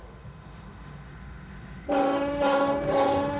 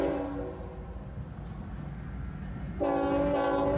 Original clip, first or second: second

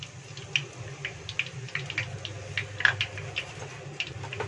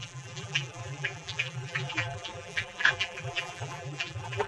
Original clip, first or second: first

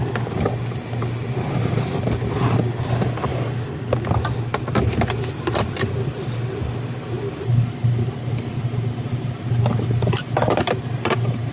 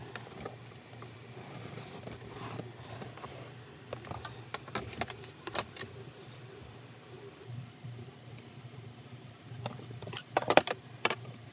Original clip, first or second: first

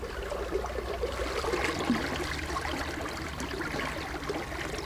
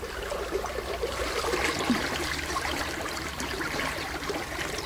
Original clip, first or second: first